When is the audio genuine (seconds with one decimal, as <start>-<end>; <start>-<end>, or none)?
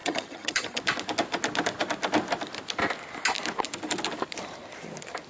0.8-5.3